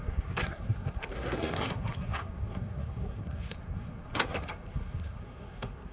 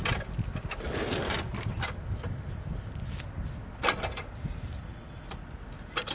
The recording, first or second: second